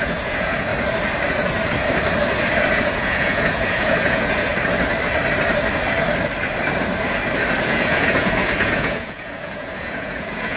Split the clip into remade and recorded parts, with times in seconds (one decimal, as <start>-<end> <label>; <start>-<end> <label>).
0.0-0.7 remade; 0.7-2.7 recorded; 2.7-4.5 remade; 4.5-7.6 recorded; 7.6-10.6 remade